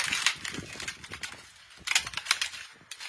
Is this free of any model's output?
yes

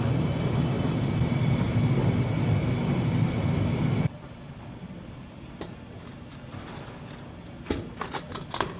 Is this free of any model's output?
yes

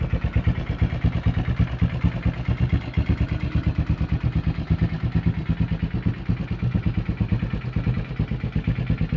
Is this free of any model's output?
yes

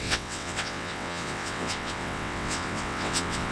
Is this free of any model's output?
no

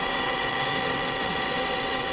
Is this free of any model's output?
no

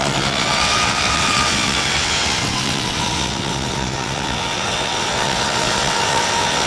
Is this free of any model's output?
no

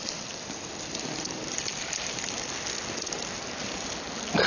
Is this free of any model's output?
yes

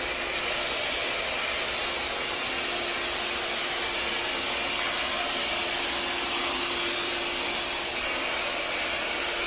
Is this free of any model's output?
yes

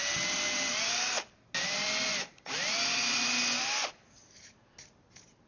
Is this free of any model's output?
yes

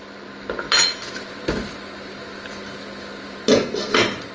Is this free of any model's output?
yes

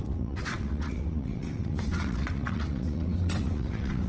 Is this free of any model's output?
no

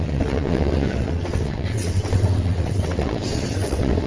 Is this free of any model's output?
no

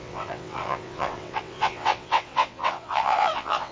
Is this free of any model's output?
no